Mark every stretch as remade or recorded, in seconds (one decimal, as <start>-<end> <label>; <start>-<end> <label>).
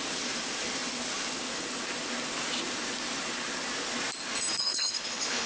0.0-4.6 recorded; 4.6-5.5 remade